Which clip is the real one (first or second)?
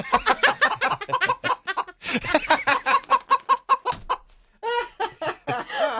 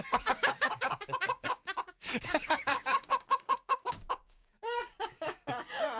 first